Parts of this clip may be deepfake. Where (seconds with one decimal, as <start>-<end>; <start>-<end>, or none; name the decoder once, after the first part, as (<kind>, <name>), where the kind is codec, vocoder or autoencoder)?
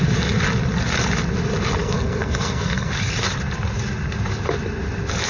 1.8-2.9 (codec, SNAC)